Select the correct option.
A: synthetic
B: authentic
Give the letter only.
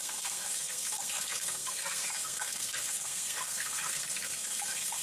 A